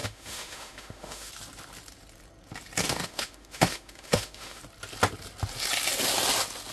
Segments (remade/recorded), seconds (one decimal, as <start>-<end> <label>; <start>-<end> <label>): 0.0-1.3 remade; 1.3-2.8 recorded; 2.8-4.6 remade; 4.6-6.7 recorded